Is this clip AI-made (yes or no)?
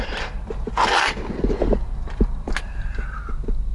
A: no